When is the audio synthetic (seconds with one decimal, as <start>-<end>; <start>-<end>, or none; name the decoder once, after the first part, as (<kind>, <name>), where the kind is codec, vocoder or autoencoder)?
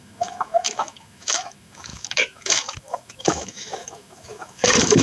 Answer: 0.0-5.0 (autoencoder, DAC-VAE)